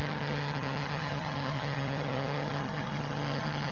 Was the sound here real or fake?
fake